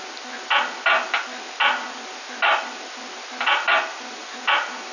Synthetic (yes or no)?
no